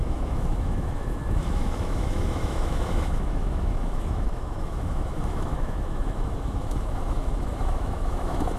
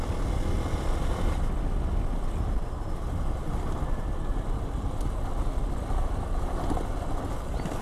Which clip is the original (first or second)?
second